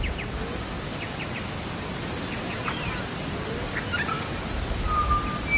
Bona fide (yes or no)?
yes